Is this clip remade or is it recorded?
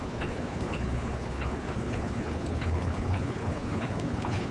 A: remade